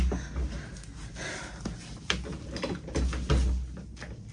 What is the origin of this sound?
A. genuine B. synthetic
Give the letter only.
A